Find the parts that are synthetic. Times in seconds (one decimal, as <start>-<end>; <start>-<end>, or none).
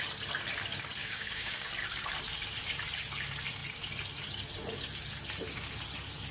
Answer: 1.0-1.7